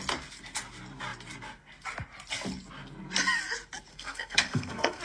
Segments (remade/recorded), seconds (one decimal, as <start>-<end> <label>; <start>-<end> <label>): 0.0-3.9 recorded; 3.9-5.0 remade